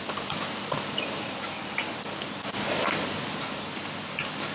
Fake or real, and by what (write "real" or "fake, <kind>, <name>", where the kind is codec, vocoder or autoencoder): real